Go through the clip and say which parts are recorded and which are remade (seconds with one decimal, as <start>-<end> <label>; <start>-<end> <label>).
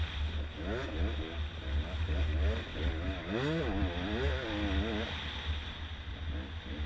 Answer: 0.0-6.9 recorded